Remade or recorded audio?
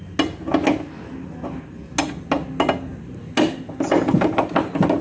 recorded